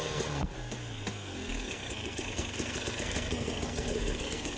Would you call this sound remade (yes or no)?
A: yes